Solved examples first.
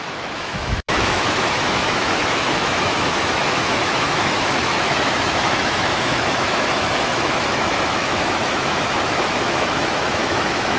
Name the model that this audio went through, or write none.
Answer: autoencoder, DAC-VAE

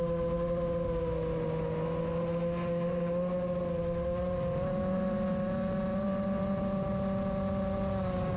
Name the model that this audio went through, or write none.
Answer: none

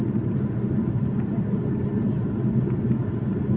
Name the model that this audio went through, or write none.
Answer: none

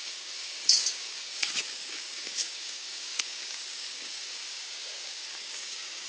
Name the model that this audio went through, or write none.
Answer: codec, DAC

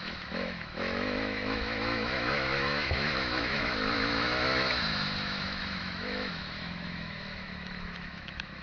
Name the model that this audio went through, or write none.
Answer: autoencoder, DAC-VAE